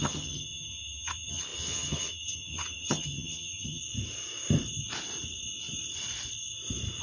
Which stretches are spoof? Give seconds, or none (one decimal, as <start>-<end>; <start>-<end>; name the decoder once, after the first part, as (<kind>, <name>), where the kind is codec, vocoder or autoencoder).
0.0-3.8 (vocoder, HiFi-GAN)